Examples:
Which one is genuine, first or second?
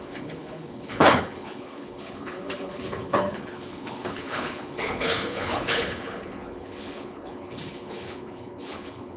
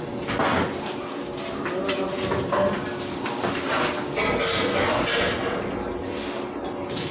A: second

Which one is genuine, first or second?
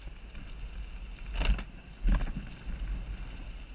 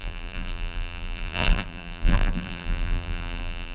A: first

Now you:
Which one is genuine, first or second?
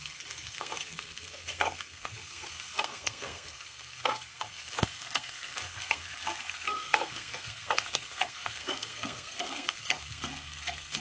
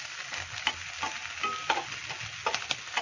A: second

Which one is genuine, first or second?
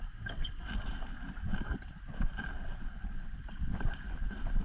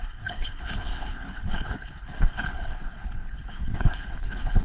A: first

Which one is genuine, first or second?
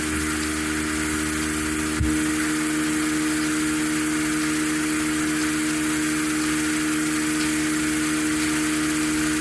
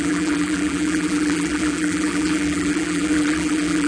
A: first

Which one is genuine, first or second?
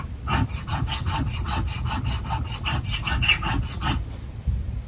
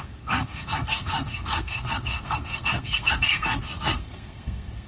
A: first